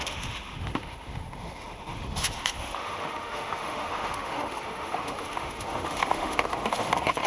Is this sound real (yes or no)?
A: no